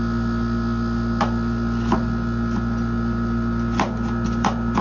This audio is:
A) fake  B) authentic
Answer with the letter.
B